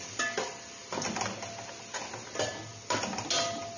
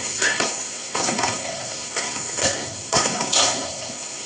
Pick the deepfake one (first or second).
second